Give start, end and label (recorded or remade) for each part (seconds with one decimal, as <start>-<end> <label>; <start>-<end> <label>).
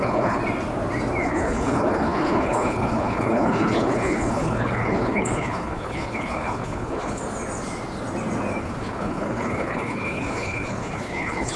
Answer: 0.0-0.4 remade; 0.4-1.2 recorded; 1.2-7.2 remade; 7.2-8.6 recorded; 8.6-11.6 remade